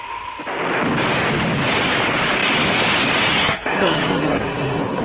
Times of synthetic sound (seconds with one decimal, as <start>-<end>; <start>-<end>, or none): 3.4-5.0